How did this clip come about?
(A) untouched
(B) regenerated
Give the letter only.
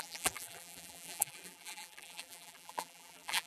B